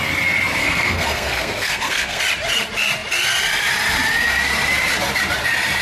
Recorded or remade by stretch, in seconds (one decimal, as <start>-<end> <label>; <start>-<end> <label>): 0.0-0.6 recorded; 0.6-2.2 remade; 2.2-5.8 recorded